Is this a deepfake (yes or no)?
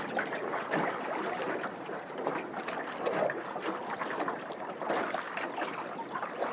no